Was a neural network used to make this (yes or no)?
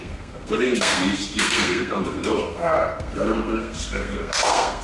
yes